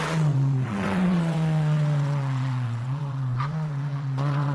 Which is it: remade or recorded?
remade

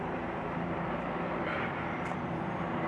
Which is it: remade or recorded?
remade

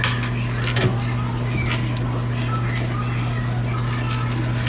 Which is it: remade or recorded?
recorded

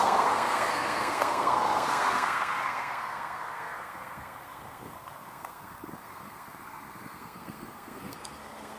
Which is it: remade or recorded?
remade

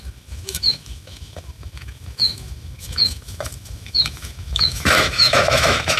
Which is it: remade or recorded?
remade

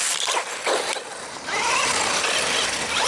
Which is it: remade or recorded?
recorded